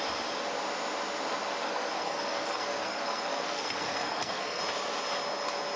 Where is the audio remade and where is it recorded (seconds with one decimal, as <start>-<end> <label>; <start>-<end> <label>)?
0.0-1.6 recorded; 1.6-4.6 remade; 4.6-5.8 recorded